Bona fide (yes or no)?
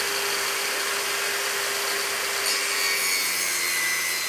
yes